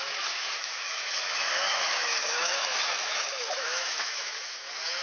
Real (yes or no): no